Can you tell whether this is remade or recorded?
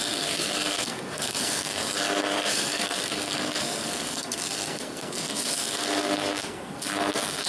remade